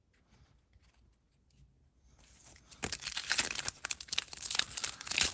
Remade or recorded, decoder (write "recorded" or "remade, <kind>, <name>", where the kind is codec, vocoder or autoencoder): recorded